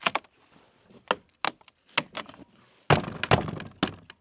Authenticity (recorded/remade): recorded